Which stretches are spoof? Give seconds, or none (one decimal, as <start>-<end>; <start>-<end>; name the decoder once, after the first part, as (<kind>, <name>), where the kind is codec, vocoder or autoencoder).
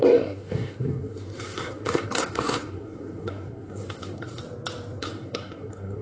0.0-4.4 (codec, SNAC); 5.0-6.0